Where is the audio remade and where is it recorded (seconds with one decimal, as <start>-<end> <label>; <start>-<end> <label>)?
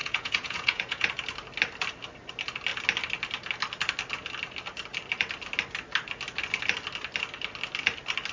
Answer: 0.0-1.1 remade; 1.1-8.3 recorded